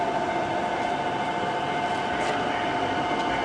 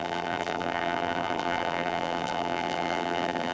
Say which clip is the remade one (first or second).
second